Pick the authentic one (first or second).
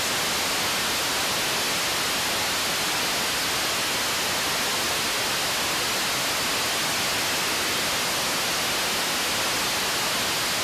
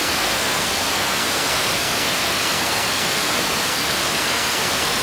first